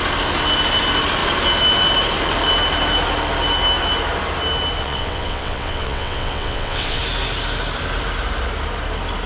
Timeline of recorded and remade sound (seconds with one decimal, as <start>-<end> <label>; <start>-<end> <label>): 0.0-4.8 recorded; 4.8-7.0 remade; 7.0-9.3 recorded